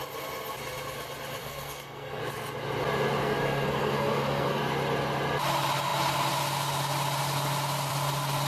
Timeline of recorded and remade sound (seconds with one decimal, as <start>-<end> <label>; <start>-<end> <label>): 0.0-1.4 recorded; 1.4-2.2 remade; 2.2-3.2 recorded; 3.2-4.6 remade; 4.6-8.5 recorded